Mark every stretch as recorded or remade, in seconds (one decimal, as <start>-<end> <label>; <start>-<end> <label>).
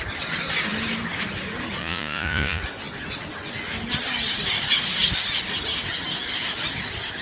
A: 0.0-1.8 recorded; 1.8-2.6 remade; 2.6-7.2 recorded